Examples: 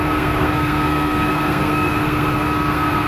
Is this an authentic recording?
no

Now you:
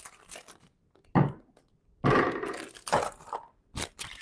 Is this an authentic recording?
yes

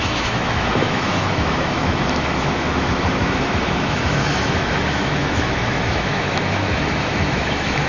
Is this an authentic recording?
no